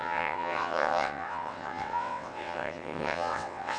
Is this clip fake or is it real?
fake